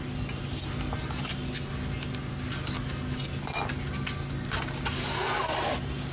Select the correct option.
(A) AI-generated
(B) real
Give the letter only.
B